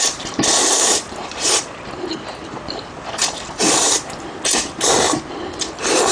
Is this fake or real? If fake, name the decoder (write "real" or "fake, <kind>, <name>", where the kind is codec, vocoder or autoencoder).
fake, vocoder, BigVGAN v2